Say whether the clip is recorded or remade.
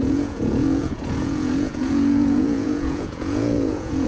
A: remade